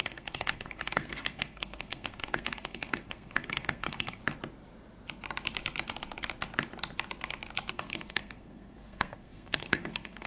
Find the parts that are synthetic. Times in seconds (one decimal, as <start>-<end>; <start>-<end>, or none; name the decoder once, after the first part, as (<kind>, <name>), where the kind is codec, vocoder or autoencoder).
0.0-4.2 (codec, SNAC); 7.7-10.3